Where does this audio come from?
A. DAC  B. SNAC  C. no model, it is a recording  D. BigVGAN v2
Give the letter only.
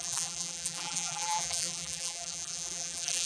D